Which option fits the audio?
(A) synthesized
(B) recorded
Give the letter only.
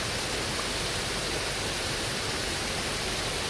B